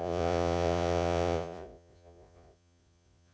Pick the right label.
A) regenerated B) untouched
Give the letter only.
A